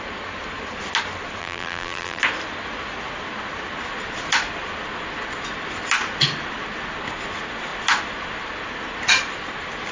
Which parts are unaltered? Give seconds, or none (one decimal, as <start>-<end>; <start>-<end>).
0.0-1.4; 2.2-9.9